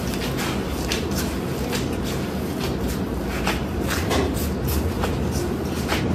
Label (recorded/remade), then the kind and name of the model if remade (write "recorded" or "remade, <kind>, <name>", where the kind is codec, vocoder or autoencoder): recorded